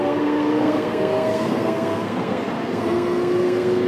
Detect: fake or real fake